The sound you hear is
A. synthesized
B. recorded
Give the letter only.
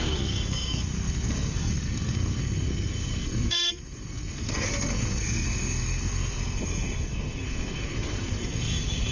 A